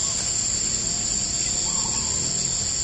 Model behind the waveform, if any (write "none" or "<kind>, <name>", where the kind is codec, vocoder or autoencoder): none